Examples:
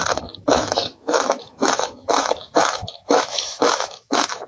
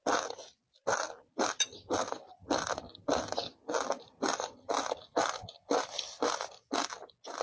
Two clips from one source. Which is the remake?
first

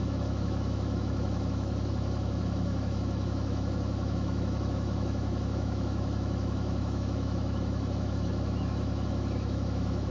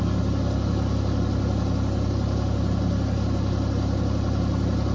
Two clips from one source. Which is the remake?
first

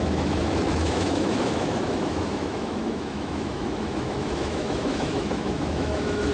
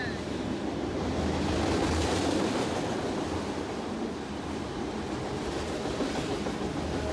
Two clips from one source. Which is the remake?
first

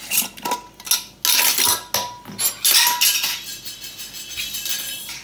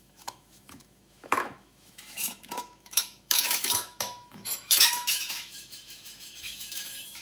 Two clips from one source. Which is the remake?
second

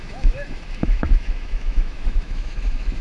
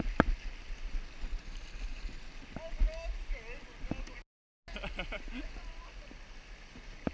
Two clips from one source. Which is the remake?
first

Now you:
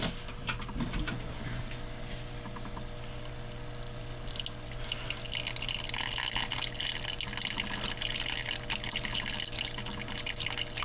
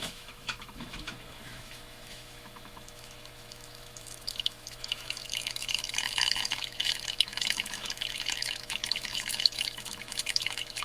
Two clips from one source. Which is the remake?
second